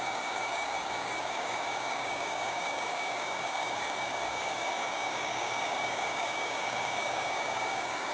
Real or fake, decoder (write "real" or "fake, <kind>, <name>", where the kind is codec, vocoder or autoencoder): fake, codec, DAC